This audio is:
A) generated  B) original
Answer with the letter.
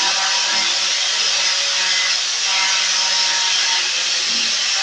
B